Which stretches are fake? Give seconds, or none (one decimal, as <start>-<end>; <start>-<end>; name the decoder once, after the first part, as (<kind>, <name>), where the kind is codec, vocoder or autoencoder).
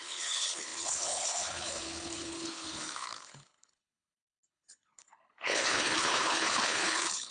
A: 0.0-7.3 (codec, HILCodec)